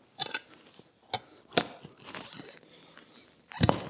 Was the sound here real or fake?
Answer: real